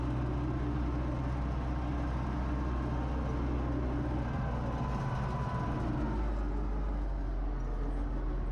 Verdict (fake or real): real